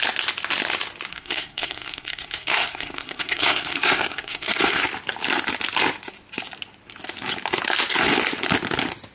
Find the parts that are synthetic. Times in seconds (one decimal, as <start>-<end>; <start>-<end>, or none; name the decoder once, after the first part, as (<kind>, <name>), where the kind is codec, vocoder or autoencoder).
1.1-4.8 (codec, SNAC)